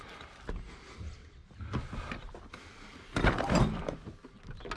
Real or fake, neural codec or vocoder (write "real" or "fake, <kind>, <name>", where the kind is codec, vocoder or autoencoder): real